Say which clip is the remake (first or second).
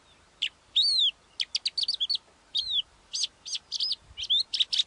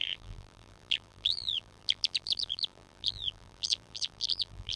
second